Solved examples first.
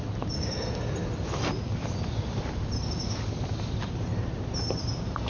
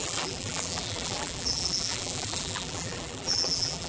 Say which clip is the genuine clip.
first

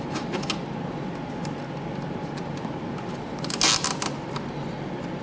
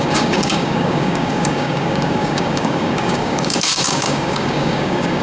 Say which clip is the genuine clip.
first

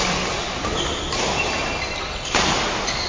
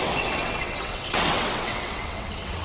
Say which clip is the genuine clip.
first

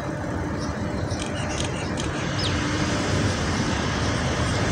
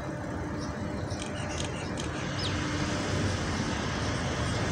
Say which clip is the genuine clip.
second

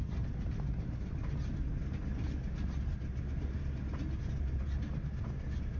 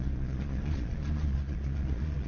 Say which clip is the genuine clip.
first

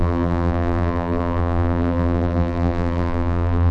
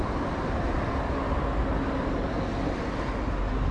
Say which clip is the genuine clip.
second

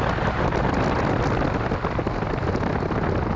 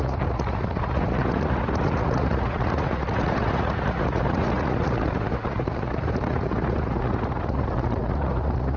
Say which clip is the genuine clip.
first